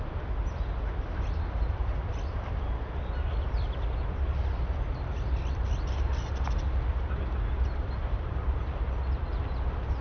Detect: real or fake real